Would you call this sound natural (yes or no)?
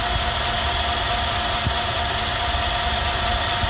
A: yes